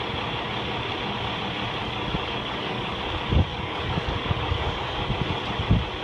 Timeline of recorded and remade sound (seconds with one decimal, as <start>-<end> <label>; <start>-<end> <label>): 0.0-1.8 recorded; 1.8-3.0 remade; 3.0-3.5 recorded; 3.5-5.1 remade; 5.1-6.0 recorded